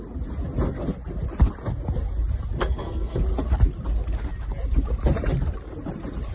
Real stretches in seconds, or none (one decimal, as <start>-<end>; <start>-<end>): 0.0-2.6; 3.2-6.3